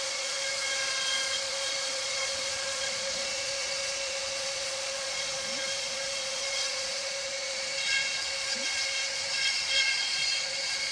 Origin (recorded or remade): remade